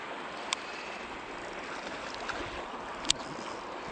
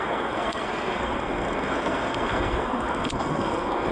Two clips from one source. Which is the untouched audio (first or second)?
first